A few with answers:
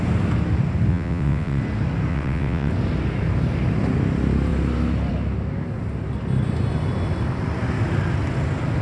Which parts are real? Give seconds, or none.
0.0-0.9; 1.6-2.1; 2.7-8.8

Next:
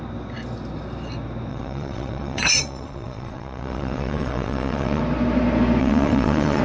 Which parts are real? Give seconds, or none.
0.0-1.5; 5.0-5.8

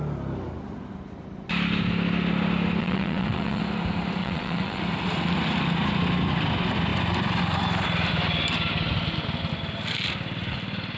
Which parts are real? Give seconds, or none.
0.0-2.8; 3.6-4.2; 4.8-11.0